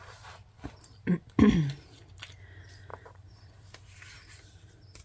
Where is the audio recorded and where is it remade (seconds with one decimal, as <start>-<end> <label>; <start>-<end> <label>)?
0.0-2.9 recorded; 2.9-3.5 remade; 3.5-5.0 recorded